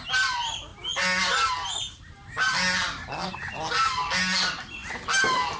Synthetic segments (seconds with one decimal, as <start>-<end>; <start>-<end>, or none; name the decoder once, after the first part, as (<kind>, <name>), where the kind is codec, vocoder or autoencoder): none